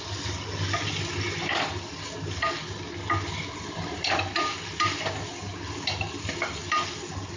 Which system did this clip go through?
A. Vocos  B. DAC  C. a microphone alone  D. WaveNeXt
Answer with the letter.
C